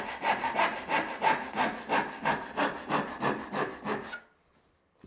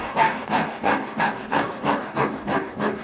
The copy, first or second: second